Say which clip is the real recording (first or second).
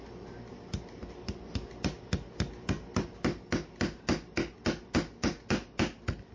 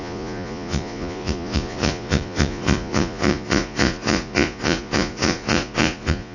first